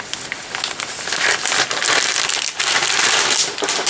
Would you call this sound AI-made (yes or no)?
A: no